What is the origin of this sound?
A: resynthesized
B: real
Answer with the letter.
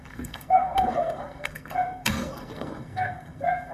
A